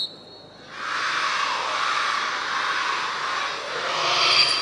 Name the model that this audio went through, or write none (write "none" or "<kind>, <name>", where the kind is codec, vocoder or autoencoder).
none